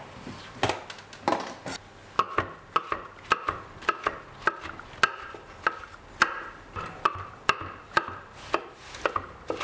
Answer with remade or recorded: recorded